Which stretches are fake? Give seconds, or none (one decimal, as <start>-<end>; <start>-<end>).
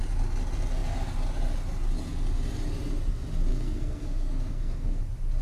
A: 3.5-5.0